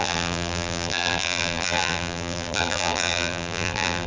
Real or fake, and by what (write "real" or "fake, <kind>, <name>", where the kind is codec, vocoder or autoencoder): fake, vocoder, BigVGAN v2